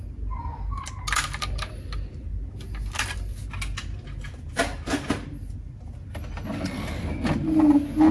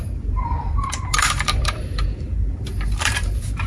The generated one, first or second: second